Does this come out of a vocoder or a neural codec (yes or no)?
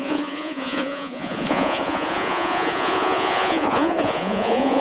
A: yes